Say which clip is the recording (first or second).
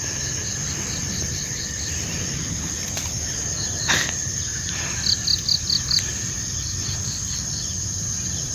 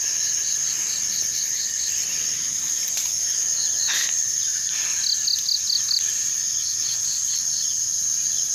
second